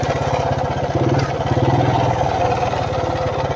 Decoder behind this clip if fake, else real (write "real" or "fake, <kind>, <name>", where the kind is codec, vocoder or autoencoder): real